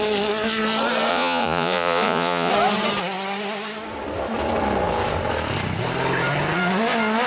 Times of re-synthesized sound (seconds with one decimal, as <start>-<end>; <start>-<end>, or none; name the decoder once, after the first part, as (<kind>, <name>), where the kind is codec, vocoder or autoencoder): 1.1-2.5 (vocoder, Vocos)